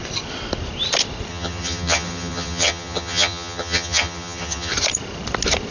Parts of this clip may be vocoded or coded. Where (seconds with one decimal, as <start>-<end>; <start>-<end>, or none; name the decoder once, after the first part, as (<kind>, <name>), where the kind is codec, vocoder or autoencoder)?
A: 1.3-4.7 (vocoder, HiFi-GAN)